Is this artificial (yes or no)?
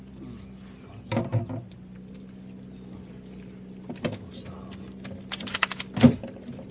no